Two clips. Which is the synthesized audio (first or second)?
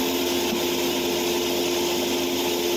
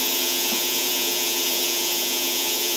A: second